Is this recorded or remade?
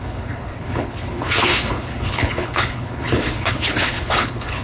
remade